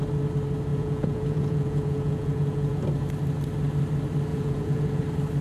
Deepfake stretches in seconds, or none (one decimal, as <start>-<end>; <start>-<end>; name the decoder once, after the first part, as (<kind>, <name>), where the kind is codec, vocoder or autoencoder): 0.7-2.8 (vocoder, Vocos); 4.3-5.0